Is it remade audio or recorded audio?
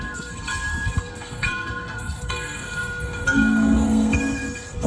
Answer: remade